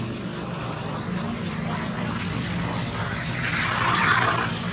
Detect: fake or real real